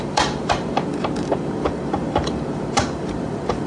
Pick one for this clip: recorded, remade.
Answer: remade